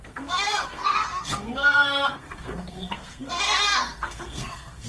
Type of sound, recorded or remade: remade